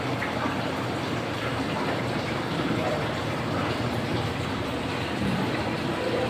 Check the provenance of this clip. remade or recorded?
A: remade